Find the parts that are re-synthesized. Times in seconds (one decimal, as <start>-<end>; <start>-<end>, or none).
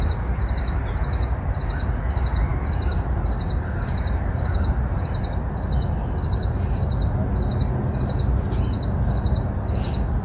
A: none